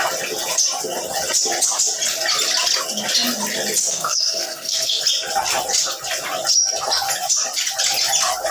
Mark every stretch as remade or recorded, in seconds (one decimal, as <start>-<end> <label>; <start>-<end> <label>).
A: 0.0-3.8 recorded; 3.8-5.0 remade; 5.0-8.5 recorded

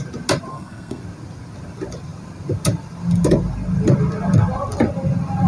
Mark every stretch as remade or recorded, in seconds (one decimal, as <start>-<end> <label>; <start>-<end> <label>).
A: 0.0-0.5 recorded; 0.5-1.0 remade; 1.0-5.5 recorded

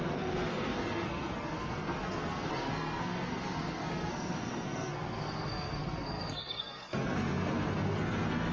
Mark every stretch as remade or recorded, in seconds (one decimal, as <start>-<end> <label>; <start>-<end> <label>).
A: 0.0-8.5 remade

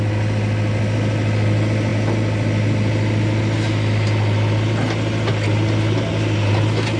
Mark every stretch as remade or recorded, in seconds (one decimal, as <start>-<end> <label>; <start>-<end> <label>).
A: 0.0-7.0 recorded

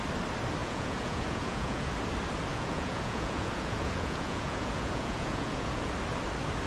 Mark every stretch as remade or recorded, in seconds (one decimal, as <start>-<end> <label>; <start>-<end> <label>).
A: 0.0-0.6 recorded; 0.6-1.9 remade; 1.9-2.5 recorded; 2.5-5.9 remade; 5.9-6.7 recorded

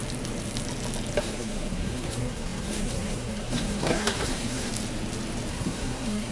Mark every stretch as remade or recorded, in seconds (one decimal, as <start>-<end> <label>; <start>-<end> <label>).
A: 0.0-1.2 recorded; 1.2-4.7 remade; 4.7-5.5 recorded; 5.5-6.3 remade